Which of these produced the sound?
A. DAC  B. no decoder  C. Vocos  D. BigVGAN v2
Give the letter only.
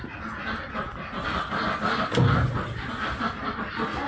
B